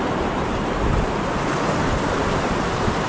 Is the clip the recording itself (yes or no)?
no